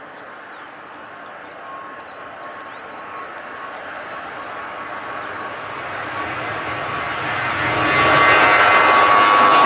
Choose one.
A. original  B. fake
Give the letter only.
A